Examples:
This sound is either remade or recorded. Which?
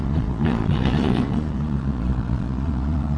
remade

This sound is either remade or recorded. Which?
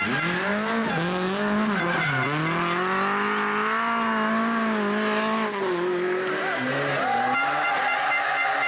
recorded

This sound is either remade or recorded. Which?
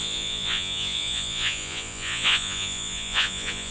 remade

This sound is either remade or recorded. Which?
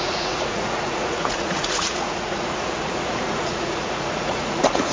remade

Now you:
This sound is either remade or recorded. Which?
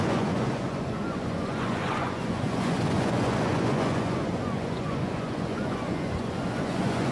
remade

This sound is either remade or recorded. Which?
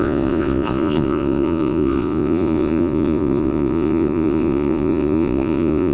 remade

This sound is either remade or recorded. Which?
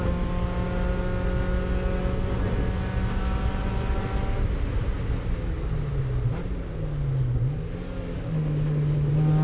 recorded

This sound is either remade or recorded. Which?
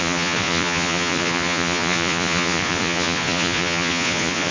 remade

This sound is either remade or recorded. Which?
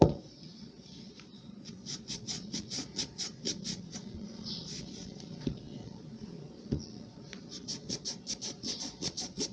remade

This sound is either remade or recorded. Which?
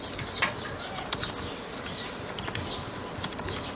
recorded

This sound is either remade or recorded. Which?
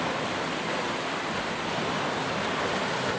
recorded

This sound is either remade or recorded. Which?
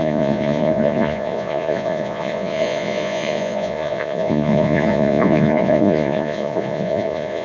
remade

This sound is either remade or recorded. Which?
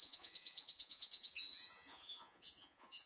remade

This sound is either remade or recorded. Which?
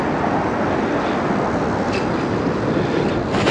recorded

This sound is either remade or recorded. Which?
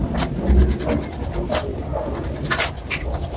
recorded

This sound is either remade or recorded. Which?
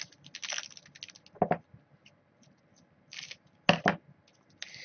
recorded